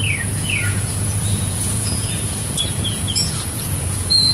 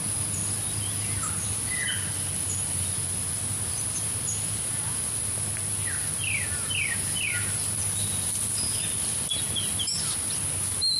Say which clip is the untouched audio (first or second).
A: second